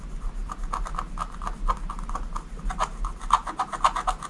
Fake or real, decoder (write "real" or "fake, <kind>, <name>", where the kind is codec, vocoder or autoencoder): real